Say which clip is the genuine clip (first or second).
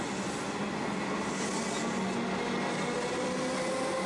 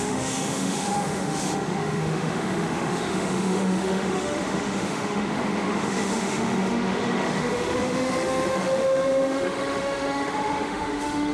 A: first